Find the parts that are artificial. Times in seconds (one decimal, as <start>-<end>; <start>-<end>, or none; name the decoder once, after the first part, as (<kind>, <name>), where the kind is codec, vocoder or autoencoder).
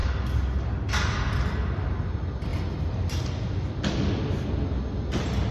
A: none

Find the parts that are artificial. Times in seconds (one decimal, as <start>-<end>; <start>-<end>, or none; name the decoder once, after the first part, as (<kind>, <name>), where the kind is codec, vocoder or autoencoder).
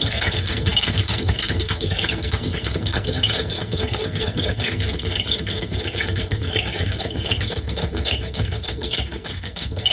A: 0.0-9.9 (codec, SNAC)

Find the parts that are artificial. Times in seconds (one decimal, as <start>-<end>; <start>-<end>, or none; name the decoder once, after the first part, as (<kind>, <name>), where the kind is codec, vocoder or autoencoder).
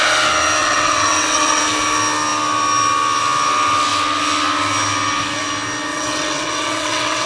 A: 0.6-1.6 (vocoder, WaveNeXt); 5.9-7.3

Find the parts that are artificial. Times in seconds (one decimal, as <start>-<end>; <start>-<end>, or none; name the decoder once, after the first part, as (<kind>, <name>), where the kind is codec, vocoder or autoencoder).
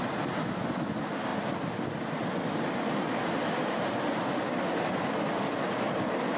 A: none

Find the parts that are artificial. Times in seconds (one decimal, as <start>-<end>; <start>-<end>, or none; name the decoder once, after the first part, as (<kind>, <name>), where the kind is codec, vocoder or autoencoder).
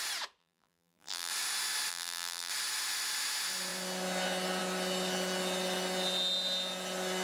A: 0.4-1.3 (vocoder, BigVGAN v2); 1.9-2.5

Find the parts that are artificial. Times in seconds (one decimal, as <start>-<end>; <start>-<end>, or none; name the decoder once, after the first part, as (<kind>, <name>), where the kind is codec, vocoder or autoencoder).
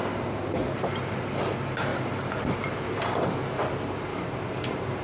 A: 0.0-1.1 (vocoder, BigVGAN v2); 1.9-3.5; 4.1-5.0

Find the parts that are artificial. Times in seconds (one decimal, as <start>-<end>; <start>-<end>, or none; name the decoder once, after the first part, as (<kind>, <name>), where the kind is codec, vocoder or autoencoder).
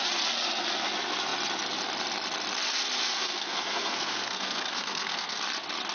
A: 3.1-5.4 (codec, SNAC)